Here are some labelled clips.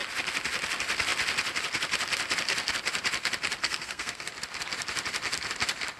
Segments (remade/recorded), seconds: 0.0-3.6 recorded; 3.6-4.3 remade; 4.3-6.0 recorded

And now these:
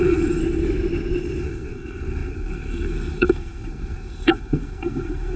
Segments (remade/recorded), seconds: 0.0-0.4 remade; 0.4-1.4 recorded; 1.4-5.4 remade

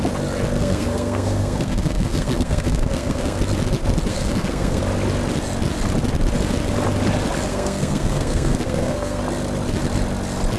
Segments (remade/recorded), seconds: 0.0-0.6 recorded; 0.6-3.4 remade; 3.4-4.1 recorded; 4.1-4.8 remade; 4.8-7.5 recorded; 7.5-9.2 remade; 9.2-10.6 recorded

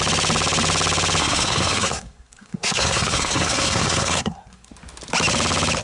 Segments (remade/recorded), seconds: 0.0-1.2 recorded; 1.2-4.7 remade; 4.7-5.8 recorded